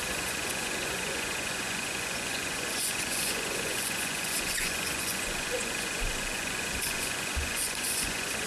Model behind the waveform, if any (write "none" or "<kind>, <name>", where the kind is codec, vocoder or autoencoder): vocoder, Vocos